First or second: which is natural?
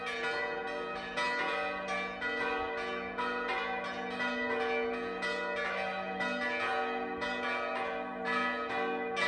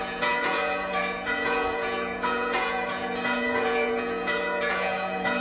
first